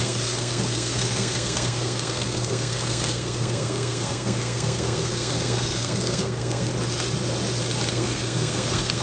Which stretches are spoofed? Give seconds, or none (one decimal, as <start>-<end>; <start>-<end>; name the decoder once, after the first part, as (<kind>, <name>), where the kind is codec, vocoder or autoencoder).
0.0-6.7 (codec, SNAC); 7.9-9.0